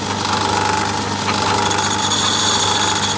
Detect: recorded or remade recorded